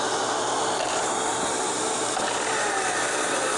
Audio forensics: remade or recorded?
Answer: recorded